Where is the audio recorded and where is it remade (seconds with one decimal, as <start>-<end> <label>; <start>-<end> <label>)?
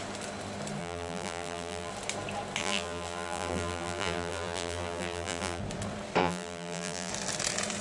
0.0-0.8 recorded; 0.8-1.9 remade; 1.9-2.6 recorded; 2.6-5.6 remade; 5.6-6.2 recorded; 6.2-7.1 remade; 7.1-7.8 recorded